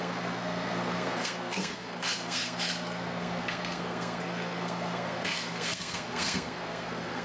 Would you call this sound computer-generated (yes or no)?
yes